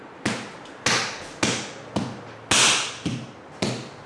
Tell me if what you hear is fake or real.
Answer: real